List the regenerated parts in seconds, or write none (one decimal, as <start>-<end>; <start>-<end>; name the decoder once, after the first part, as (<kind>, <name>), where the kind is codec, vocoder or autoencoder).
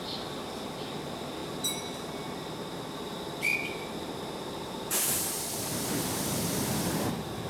1.4-2.1 (vocoder, BigVGAN v2); 3.5-7.1